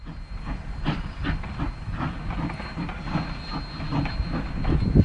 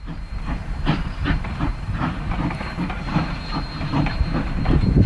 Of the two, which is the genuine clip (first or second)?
first